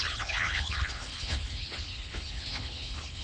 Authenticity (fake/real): fake